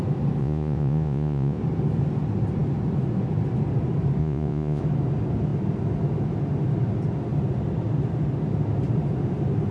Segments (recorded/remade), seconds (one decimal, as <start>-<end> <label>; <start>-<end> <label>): 0.0-0.4 recorded; 0.4-1.6 remade; 1.6-4.2 recorded; 4.2-4.8 remade; 4.8-9.7 recorded